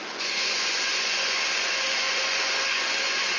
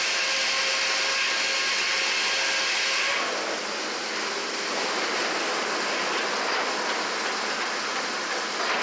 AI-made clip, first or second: first